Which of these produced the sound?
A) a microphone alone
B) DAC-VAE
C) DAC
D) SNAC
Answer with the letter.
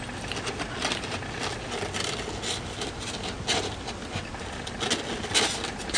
A